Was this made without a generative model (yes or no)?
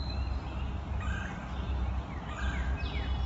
yes